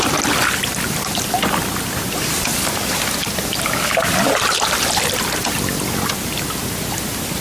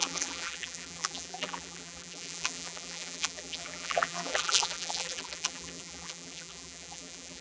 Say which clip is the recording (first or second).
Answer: first